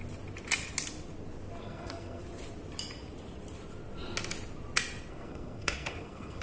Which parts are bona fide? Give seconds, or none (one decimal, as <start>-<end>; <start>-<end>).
0.0-1.6; 2.2-5.1